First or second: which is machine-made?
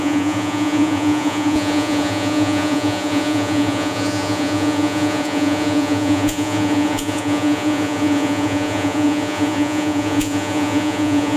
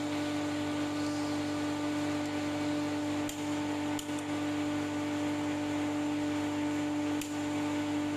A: first